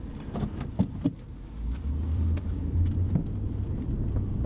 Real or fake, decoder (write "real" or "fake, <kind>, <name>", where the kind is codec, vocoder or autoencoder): fake, vocoder, BigVGAN v2